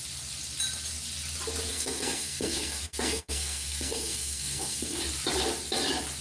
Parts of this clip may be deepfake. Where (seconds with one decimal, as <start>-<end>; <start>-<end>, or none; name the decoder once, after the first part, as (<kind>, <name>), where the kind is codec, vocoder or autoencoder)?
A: 1.7-5.0 (codec, SNAC)